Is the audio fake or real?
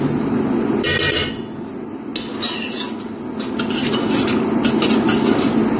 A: real